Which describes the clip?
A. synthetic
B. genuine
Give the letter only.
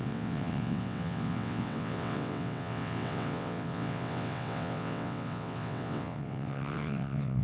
A